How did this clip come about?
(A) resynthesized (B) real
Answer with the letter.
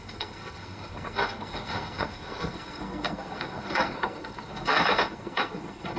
A